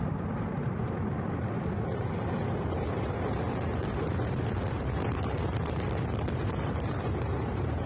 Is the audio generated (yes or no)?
yes